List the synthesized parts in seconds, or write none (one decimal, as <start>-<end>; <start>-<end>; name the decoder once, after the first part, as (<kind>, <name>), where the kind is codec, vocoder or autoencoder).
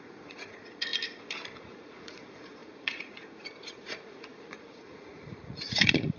0.0-0.9 (vocoder, Vocos); 1.6-6.2